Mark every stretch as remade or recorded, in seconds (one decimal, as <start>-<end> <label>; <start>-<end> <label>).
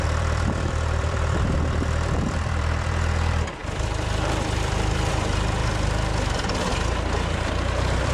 0.0-8.1 remade